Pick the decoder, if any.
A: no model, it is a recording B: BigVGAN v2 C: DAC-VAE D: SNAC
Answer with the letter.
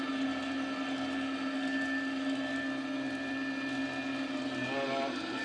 A